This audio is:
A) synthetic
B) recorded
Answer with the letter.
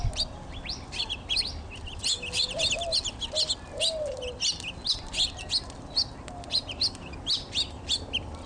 B